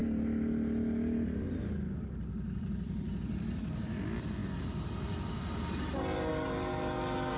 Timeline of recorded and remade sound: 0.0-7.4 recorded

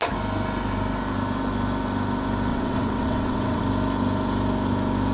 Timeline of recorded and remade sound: 0.0-2.5 recorded; 2.5-3.6 remade; 3.6-5.1 recorded

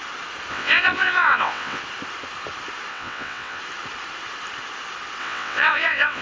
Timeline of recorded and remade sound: 0.0-0.5 recorded; 0.5-1.8 remade; 1.8-2.9 recorded; 2.9-3.6 remade; 3.6-5.2 recorded; 5.2-6.2 remade

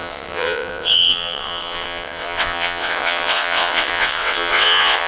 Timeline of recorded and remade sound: 0.0-5.1 remade